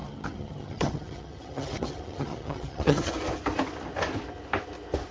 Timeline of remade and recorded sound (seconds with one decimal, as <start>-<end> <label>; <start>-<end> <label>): 0.0-3.1 remade; 3.1-5.1 recorded